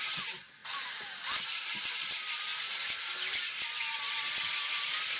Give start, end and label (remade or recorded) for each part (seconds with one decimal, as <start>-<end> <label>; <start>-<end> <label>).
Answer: 0.0-5.2 recorded